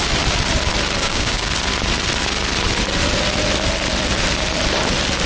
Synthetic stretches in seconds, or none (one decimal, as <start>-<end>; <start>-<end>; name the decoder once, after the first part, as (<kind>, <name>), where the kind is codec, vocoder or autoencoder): 1.0-1.5 (codec, DAC)